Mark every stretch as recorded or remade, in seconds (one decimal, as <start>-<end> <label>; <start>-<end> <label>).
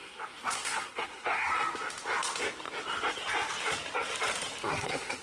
0.0-1.5 remade; 1.5-4.6 recorded; 4.6-5.2 remade